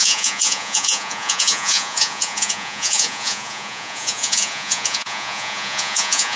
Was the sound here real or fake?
fake